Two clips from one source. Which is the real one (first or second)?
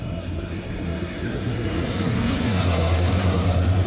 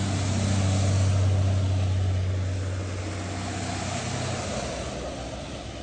second